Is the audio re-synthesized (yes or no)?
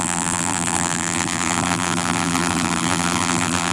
yes